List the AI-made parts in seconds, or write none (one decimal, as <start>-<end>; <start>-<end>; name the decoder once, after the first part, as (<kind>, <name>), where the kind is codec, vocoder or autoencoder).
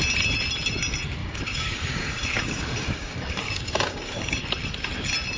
1.2-4.4 (codec, DAC)